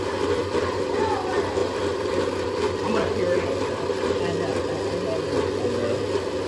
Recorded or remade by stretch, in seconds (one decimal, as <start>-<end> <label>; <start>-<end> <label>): 0.0-0.4 recorded; 0.4-1.1 remade; 1.1-1.6 recorded; 1.6-4.6 remade; 4.6-6.5 recorded